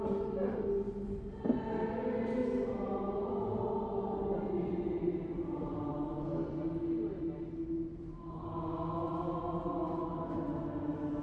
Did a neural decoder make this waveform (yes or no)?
no